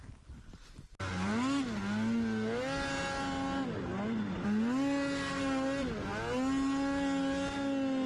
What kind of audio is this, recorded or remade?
recorded